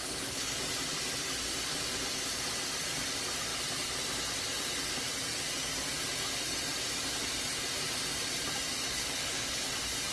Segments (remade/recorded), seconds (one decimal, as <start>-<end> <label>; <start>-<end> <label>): 0.0-0.6 remade; 0.6-8.9 recorded; 8.9-9.7 remade; 9.7-10.1 recorded